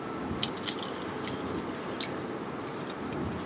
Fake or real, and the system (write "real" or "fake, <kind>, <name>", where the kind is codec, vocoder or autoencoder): real